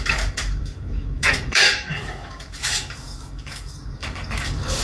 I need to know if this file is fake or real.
fake